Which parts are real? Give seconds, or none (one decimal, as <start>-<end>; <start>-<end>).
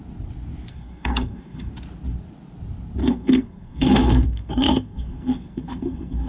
0.0-0.7; 1.7-3.0